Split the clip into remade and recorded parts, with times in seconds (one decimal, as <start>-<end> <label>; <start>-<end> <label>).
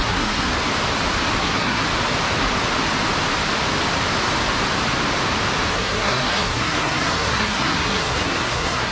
0.0-0.5 remade; 0.5-1.4 recorded; 1.4-1.8 remade; 1.8-5.7 recorded; 5.7-8.9 remade